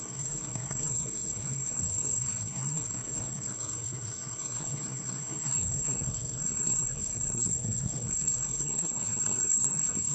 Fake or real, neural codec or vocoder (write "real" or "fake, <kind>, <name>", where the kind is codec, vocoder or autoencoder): fake, codec, SNAC